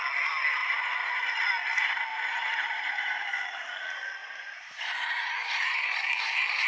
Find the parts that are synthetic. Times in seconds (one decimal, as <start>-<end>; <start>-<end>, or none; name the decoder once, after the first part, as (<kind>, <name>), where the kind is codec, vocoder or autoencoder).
0.6-1.2 (vocoder, BigVGAN v2); 2.1-3.3; 4.2-6.2